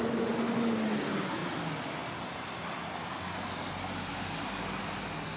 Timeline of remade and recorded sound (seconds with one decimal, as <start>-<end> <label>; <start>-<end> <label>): 0.0-5.4 recorded